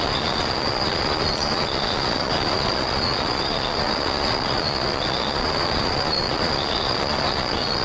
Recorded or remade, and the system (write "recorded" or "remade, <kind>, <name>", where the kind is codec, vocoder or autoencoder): remade, vocoder, Vocos